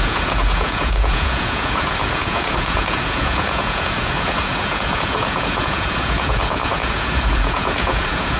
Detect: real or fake fake